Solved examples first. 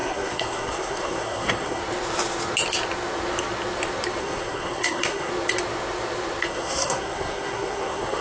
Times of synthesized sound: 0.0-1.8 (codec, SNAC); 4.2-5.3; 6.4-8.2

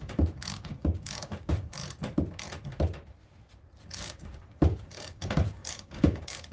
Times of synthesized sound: 0.0-1.8 (codec, DAC); 3.9-6.5

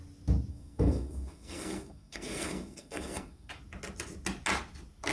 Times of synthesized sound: 0.5-3.5 (codec, SNAC)

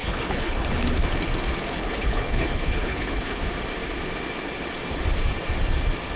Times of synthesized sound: 0.0-0.7 (codec, HILCodec); 1.8-3.4